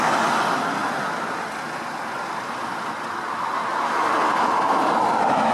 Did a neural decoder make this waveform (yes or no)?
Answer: no